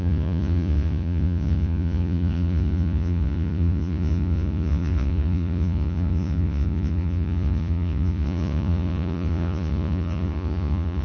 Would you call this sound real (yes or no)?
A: no